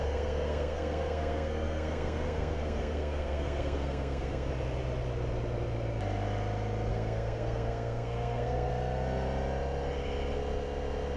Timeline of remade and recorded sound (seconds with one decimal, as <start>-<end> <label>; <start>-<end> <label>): 0.0-4.5 remade; 4.5-6.9 recorded; 6.9-8.7 remade; 8.7-11.2 recorded